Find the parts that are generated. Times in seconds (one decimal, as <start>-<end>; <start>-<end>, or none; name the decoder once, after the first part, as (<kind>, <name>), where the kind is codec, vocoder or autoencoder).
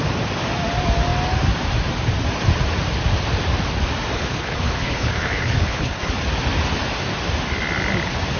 4.1-6.1 (codec, HILCodec)